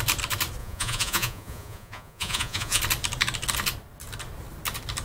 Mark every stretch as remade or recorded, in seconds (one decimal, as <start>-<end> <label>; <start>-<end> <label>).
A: 0.0-0.6 recorded; 0.6-2.8 remade; 2.8-5.0 recorded